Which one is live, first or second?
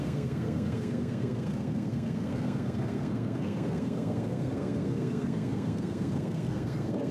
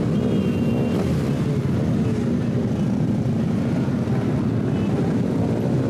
second